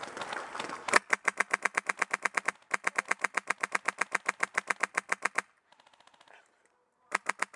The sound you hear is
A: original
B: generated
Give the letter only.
A